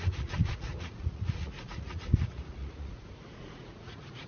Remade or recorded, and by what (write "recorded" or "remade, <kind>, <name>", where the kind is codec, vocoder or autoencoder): remade, vocoder, Vocos